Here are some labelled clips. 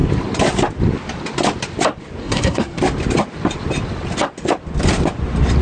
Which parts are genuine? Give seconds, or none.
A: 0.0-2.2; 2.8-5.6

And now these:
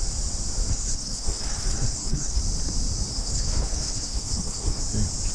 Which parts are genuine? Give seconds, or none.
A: 0.0-0.7; 2.4-3.1; 4.8-5.3